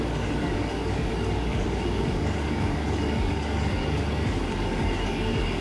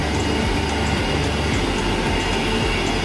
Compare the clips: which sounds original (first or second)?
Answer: second